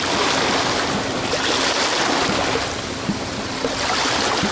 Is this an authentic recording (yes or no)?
yes